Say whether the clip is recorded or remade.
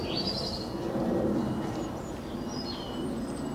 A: recorded